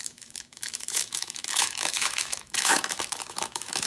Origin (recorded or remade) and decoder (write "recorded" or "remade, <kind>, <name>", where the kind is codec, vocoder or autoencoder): remade, autoencoder, DAC-VAE